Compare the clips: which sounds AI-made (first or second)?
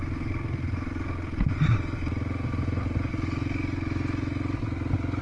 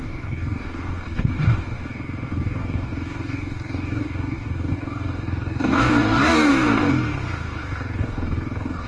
second